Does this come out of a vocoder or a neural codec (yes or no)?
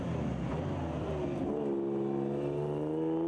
no